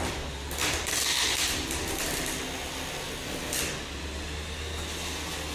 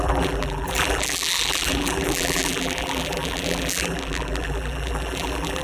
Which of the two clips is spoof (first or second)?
second